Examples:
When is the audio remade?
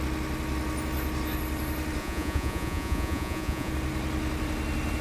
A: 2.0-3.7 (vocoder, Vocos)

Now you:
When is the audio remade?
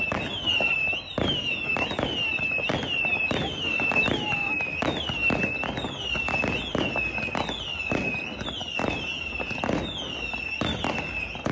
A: none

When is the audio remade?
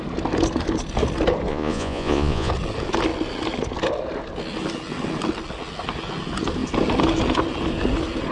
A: 1.5-2.5 (vocoder, Vocos)